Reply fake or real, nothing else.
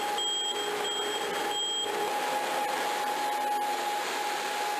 real